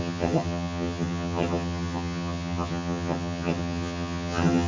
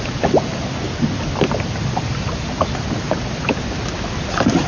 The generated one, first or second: first